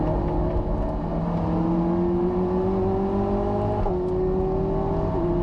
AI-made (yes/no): no